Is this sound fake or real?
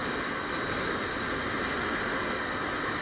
real